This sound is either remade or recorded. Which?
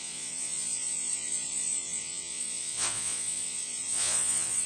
remade